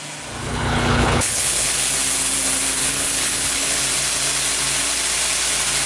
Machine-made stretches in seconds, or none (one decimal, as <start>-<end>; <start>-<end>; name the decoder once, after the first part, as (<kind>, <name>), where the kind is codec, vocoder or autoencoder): 0.4-1.7 (codec, HILCodec); 2.8-3.8